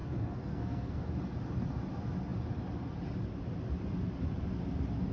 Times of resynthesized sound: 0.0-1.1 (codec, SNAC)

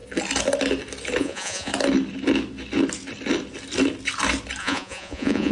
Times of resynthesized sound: 1.2-1.7 (vocoder, Vocos); 4.6-5.5

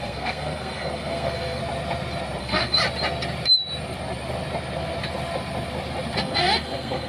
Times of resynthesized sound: 0.0-1.6 (codec, SNAC); 2.4-2.8; 6.2-7.1

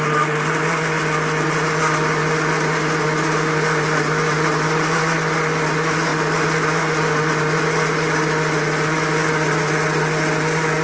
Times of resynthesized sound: none

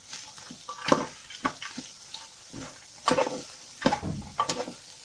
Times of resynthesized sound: 3.2-3.9 (vocoder, BigVGAN v2)

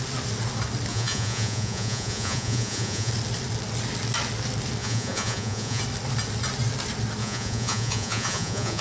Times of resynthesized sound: 0.9-3.1 (vocoder, Vocos); 4.8-5.8; 7.2-8.8

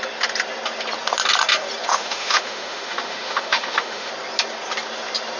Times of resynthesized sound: 1.9-4.1 (autoencoder, DAC-VAE)

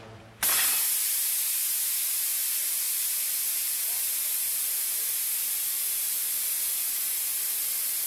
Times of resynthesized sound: none